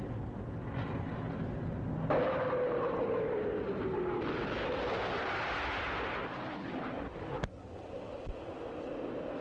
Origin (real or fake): real